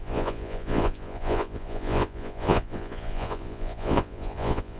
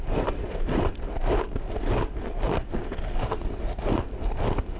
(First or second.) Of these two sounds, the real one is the second